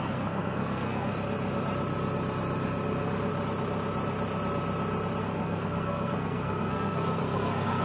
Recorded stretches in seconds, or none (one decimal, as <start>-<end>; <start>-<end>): 1.1-5.2